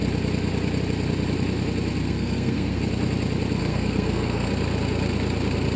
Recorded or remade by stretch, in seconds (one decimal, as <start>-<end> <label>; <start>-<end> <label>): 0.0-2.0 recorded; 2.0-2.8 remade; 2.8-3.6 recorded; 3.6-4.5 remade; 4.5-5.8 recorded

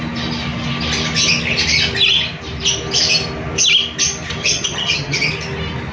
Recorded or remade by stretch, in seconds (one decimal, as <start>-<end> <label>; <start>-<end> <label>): 0.0-4.4 recorded; 4.4-5.3 remade; 5.3-5.9 recorded

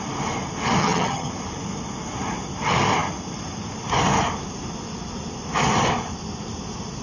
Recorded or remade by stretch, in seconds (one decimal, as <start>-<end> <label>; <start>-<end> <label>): 0.0-0.8 recorded; 0.8-1.3 remade; 1.3-7.0 recorded